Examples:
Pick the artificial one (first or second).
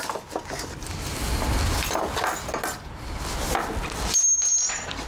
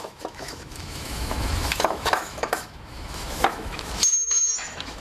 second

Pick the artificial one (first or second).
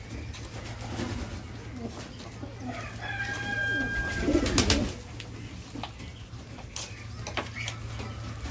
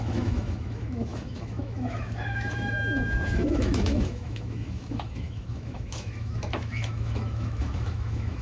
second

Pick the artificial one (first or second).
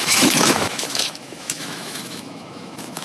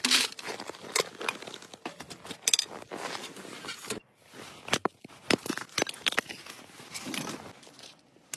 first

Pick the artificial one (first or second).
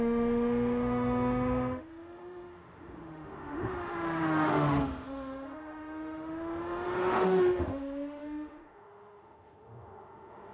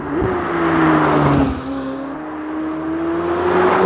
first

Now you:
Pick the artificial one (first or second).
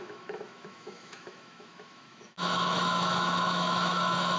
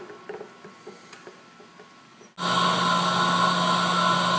first